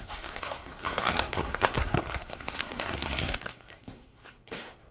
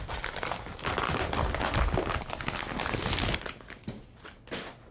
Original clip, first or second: second